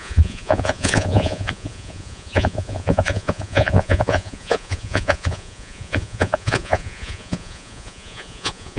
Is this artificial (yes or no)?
yes